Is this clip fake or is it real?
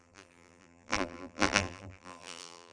fake